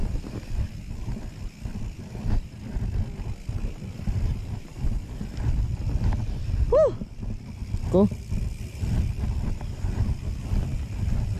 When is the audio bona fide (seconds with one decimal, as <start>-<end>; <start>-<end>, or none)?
0.0-11.4